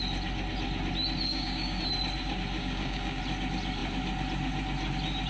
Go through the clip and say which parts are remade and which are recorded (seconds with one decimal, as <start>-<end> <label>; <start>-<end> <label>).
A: 0.0-1.3 recorded; 1.3-1.8 remade; 1.8-2.6 recorded; 2.6-3.2 remade; 3.2-5.3 recorded